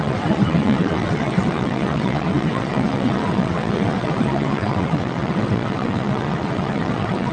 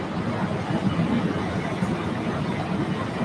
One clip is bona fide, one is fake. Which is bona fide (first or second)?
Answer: second